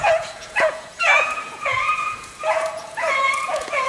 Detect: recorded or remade remade